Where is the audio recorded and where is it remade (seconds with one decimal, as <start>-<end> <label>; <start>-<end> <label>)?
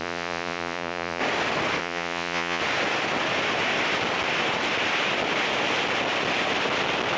0.0-1.2 remade; 1.2-1.8 recorded; 1.8-2.6 remade; 2.6-7.2 recorded